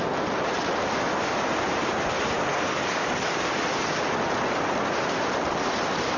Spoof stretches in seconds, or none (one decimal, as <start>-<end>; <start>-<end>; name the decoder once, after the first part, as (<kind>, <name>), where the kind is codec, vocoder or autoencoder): 2.5-3.6 (codec, DAC)